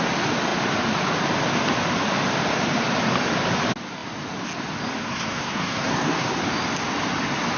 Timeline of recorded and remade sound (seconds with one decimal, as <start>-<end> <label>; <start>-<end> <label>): 0.0-5.0 recorded; 5.0-6.4 remade; 6.4-7.6 recorded